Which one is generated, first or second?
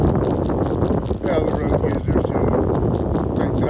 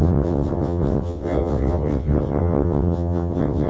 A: second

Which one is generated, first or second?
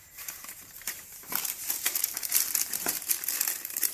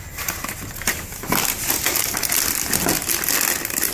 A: first